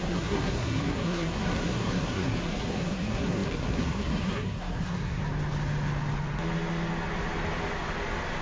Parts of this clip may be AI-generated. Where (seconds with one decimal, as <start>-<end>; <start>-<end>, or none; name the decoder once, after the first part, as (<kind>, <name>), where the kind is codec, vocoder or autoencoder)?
0.0-5.2 (codec, SNAC)